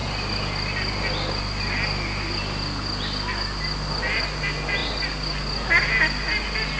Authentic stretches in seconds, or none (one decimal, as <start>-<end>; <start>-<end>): 0.0-6.8